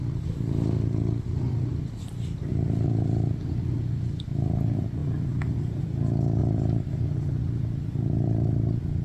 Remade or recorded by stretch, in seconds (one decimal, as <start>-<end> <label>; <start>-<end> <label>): 0.0-1.7 recorded; 1.7-2.5 remade; 2.5-6.4 recorded; 6.4-7.6 remade; 7.6-9.0 recorded